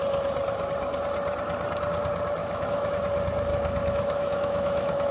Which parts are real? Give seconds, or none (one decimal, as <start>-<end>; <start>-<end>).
0.0-2.4; 2.9-3.5